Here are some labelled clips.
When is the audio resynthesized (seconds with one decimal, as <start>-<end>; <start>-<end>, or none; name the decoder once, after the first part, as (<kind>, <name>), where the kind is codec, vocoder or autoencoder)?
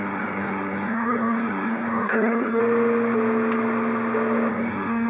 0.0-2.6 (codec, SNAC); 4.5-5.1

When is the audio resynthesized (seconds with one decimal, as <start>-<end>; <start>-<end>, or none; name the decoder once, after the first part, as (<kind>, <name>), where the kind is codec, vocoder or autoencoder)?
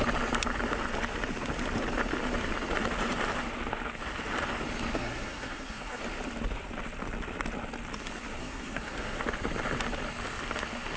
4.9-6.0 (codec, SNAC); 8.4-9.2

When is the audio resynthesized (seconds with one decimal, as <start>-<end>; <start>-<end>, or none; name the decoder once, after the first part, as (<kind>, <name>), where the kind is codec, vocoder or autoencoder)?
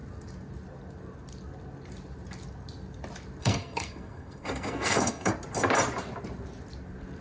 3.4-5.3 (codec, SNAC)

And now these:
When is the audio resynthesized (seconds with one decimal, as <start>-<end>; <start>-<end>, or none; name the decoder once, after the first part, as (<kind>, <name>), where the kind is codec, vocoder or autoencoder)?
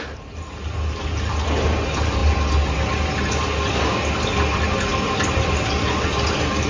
4.9-5.5 (vocoder, BigVGAN v2)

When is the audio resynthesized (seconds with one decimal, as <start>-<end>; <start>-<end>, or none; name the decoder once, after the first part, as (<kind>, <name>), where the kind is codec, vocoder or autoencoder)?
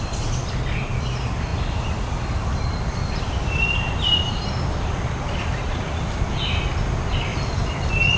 1.5-6.2 (vocoder, BigVGAN v2); 7.3-8.2